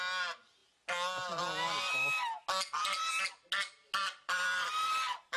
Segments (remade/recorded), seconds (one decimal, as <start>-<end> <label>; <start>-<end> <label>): 0.0-4.0 recorded; 4.0-5.4 remade

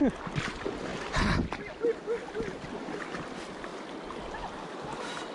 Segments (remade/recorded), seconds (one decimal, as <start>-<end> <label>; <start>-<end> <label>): 0.0-5.3 recorded

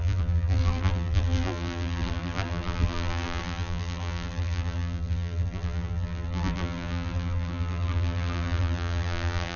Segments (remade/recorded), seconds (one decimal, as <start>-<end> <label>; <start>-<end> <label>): 0.0-9.6 remade